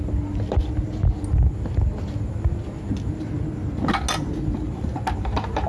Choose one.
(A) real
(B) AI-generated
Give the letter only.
A